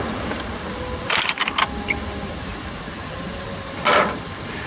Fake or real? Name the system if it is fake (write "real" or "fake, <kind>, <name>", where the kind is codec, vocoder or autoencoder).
real